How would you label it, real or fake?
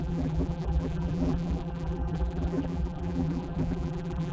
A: fake